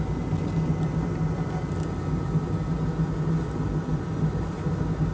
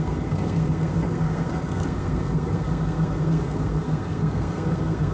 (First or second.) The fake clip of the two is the second